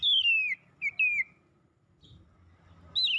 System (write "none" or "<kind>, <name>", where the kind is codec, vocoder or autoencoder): none